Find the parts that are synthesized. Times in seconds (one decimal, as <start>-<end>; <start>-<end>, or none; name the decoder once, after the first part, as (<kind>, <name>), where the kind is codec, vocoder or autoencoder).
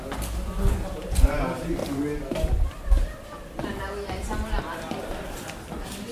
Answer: none